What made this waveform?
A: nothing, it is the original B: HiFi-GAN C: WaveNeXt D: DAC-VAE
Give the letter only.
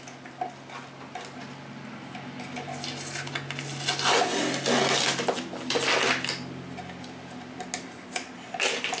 A